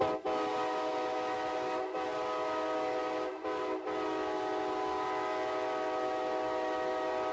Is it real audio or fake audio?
real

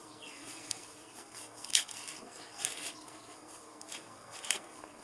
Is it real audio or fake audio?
fake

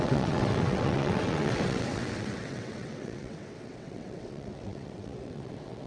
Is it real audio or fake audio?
fake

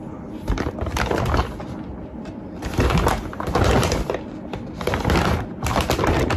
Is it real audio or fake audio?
real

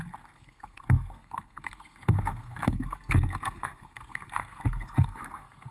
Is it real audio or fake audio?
fake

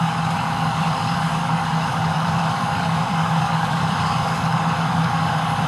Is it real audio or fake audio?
fake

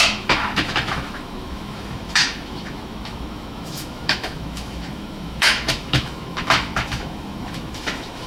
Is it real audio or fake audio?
fake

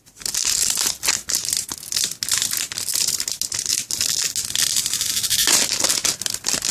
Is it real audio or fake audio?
real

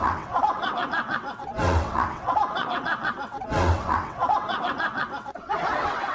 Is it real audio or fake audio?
fake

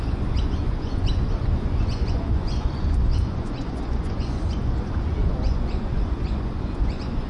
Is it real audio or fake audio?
fake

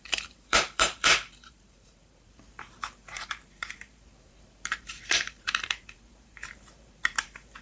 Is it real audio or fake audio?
fake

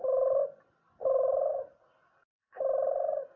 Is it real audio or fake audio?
real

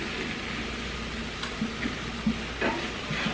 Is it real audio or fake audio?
real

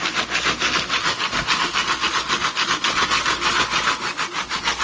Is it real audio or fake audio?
real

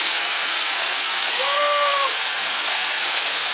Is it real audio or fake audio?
fake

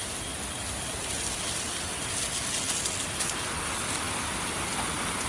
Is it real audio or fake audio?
real